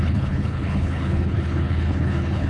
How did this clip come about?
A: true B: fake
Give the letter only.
B